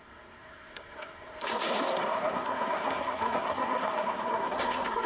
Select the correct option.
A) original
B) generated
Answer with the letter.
B